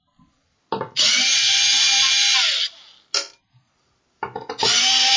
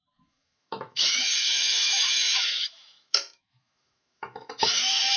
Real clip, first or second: first